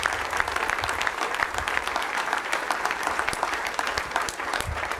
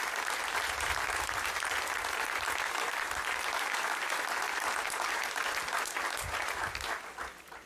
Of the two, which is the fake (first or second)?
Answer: first